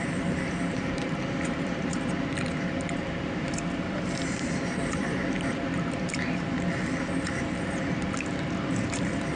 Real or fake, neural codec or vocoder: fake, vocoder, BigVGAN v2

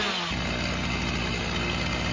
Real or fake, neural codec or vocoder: real